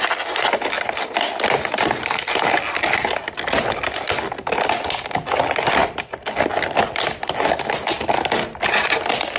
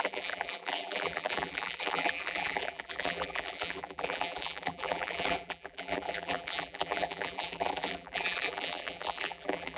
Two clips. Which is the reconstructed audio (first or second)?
second